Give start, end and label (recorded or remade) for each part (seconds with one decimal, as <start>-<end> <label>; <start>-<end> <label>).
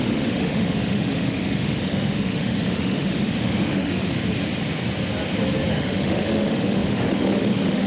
0.0-4.2 remade; 4.2-5.7 recorded; 5.7-7.9 remade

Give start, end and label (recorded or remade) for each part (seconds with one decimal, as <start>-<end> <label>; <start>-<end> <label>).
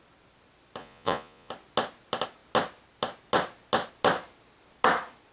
0.0-0.8 recorded; 0.8-1.5 remade; 1.5-5.3 recorded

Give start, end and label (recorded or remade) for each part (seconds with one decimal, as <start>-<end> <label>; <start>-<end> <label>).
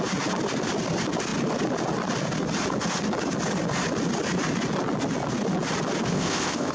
0.0-6.1 recorded; 6.1-6.7 remade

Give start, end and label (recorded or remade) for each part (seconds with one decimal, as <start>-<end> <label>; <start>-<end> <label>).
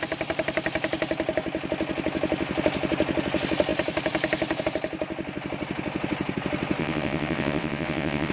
0.0-6.8 recorded; 6.8-8.3 remade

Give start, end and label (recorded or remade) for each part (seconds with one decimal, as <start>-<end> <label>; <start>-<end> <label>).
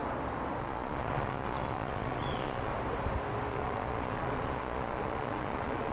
0.0-0.6 recorded; 0.6-2.7 remade; 2.7-3.5 recorded; 3.5-5.9 remade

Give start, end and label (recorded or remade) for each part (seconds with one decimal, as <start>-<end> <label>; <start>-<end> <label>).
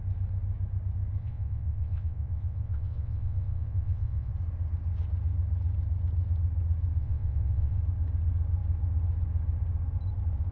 0.0-1.2 recorded; 1.2-4.3 remade; 4.3-7.0 recorded; 7.0-7.8 remade; 7.8-10.5 recorded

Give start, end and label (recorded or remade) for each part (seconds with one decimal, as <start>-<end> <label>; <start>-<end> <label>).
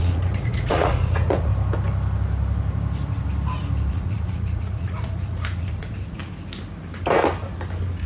0.0-1.5 remade; 1.5-3.9 recorded; 3.9-6.2 remade; 6.2-8.1 recorded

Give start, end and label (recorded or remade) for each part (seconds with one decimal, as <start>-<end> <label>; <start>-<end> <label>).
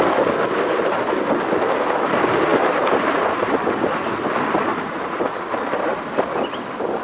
0.0-2.5 recorded; 2.5-3.2 remade; 3.2-4.7 recorded; 4.7-5.4 remade; 5.4-7.0 recorded